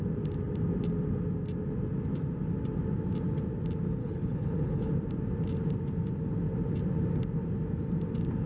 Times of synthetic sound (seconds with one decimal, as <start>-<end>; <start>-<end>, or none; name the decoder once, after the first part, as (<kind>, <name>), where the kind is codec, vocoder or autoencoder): 4.0-4.9 (codec, HILCodec)